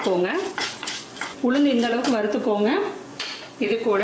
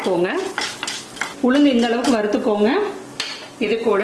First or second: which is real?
second